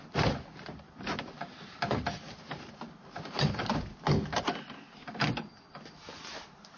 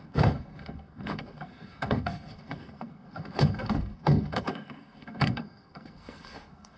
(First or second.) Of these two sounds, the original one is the first